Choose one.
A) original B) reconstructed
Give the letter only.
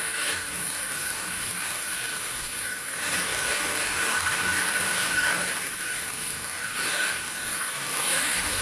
B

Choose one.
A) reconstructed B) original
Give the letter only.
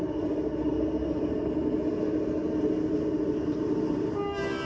B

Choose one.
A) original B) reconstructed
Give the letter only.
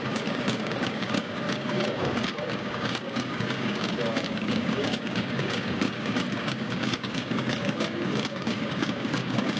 B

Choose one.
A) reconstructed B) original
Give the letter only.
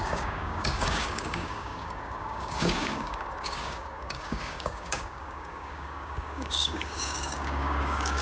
A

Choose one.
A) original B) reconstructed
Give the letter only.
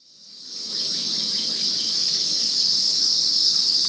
B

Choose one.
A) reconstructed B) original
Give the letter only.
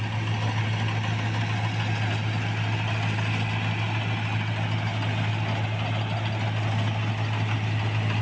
B